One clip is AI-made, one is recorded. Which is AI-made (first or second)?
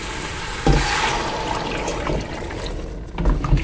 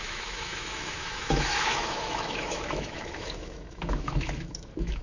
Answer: second